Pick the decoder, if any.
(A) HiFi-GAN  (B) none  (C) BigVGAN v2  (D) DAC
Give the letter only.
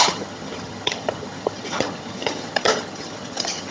A